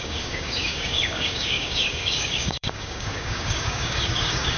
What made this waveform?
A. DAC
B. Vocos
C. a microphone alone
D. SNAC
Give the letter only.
A